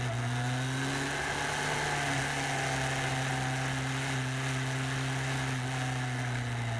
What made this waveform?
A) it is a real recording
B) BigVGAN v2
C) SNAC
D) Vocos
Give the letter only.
A